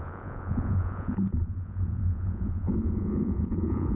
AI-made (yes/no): yes